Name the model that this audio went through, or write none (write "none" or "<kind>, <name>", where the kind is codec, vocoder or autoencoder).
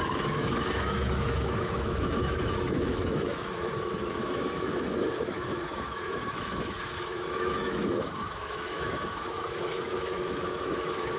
autoencoder, DAC-VAE